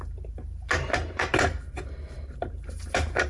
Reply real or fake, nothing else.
fake